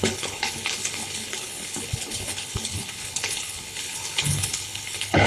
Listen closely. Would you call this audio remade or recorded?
remade